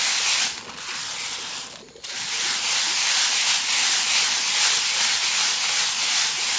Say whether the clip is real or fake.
real